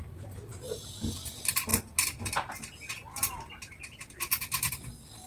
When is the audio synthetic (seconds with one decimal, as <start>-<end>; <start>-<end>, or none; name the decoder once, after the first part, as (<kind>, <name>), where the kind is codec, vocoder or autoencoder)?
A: none